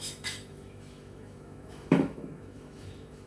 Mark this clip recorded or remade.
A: remade